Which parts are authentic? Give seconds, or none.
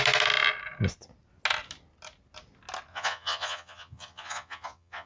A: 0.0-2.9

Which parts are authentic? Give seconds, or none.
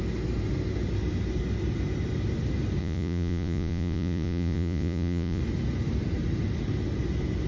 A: 0.0-2.8; 5.4-7.5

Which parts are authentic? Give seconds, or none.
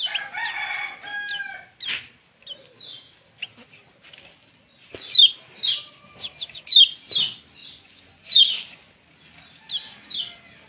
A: 0.0-7.6; 9.0-10.7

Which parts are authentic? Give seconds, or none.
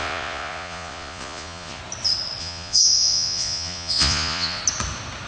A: 1.8-2.4; 4.6-5.3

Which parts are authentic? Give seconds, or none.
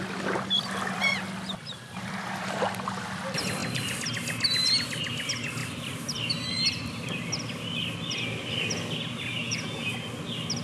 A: 0.0-9.4; 9.9-10.6